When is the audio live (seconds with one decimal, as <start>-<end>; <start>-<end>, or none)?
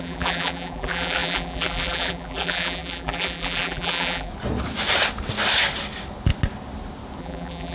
4.3-7.2